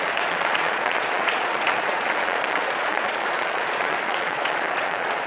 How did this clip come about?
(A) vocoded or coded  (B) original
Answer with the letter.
A